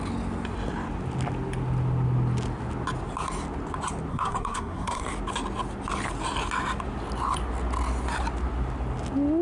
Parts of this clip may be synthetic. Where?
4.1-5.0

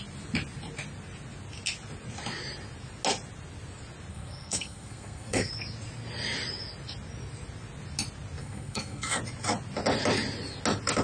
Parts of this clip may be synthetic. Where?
4.1-5.5; 8.4-9.2

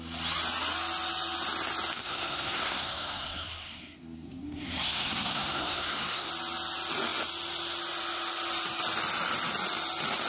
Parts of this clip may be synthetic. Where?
2.0-6.3

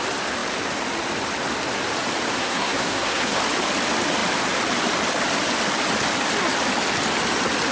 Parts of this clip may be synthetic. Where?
2.3-3.4

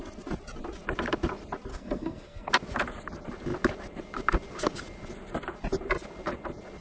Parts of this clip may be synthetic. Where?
1.7-2.5

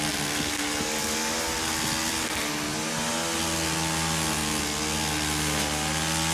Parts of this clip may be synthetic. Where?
none